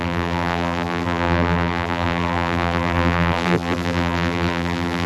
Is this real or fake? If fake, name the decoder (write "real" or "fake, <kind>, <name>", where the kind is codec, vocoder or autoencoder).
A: fake, vocoder, BigVGAN v2